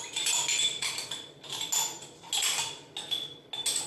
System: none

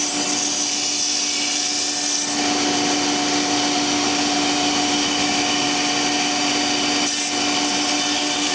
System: none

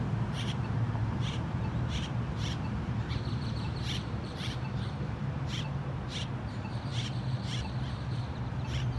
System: vocoder, BigVGAN v2